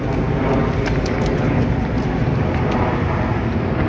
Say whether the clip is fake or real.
real